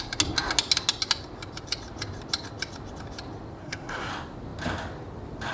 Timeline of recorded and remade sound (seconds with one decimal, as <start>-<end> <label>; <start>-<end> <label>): 0.0-3.6 recorded; 3.6-4.1 remade; 4.1-5.5 recorded